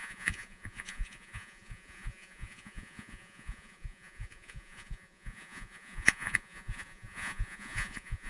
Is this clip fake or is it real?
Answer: fake